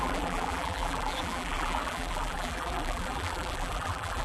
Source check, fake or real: fake